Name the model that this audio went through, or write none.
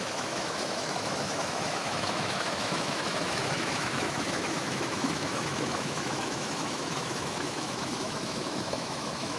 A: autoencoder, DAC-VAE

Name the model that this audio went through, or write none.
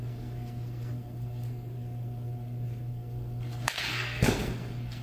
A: codec, SNAC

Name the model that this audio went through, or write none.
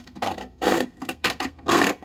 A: codec, SNAC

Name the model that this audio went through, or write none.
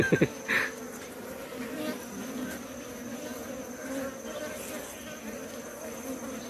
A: none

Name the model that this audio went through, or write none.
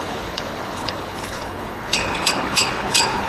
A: codec, HILCodec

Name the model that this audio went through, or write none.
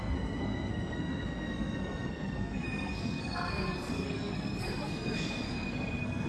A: codec, SNAC